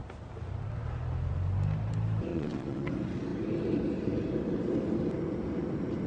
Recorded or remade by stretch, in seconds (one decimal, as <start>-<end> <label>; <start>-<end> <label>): 0.0-2.3 recorded; 2.3-2.9 remade; 2.9-6.1 recorded